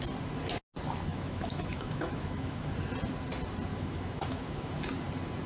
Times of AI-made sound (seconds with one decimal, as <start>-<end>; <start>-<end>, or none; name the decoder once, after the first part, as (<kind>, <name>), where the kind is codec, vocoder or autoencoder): 1.1-2.7 (autoencoder, DAC-VAE); 3.7-4.7